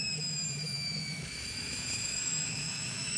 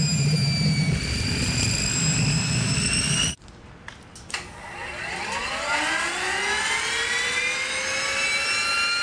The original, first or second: second